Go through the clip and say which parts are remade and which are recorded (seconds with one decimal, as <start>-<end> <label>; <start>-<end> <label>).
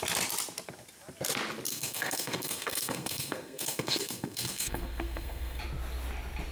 0.0-1.7 recorded; 1.7-5.6 remade; 5.6-6.5 recorded